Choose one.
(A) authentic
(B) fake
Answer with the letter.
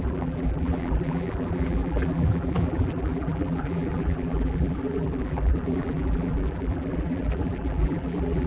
B